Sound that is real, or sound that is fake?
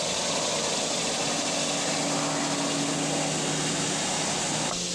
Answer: real